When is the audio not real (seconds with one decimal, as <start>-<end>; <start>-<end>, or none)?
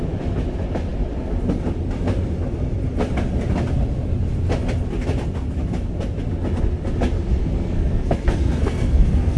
7.4-9.4